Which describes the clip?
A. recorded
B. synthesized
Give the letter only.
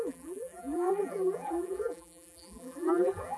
B